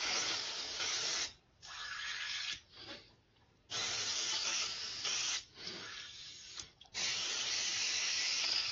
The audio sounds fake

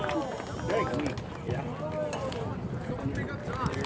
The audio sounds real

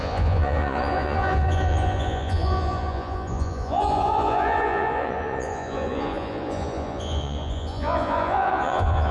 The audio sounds fake